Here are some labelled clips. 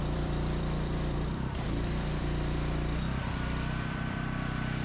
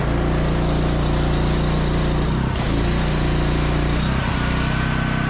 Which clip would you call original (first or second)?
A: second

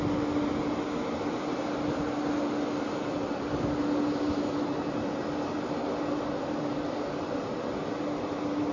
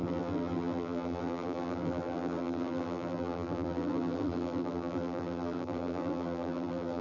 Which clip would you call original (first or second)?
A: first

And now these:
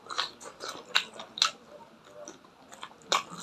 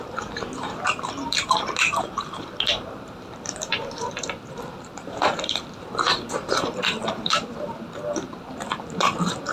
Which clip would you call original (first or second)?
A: first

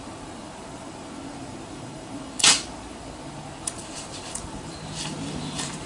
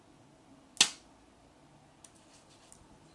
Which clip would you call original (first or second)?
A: second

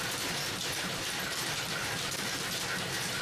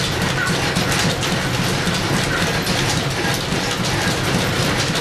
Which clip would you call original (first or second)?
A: second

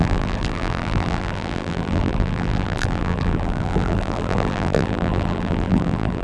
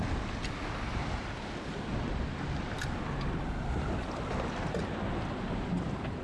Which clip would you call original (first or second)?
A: second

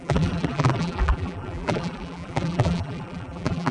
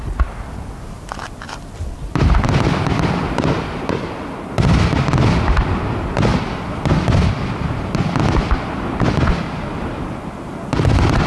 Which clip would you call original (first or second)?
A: second